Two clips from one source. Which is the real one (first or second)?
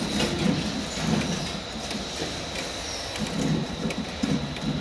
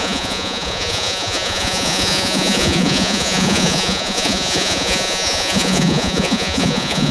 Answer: first